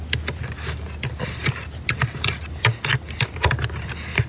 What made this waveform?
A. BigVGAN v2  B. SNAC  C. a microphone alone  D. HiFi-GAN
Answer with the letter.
C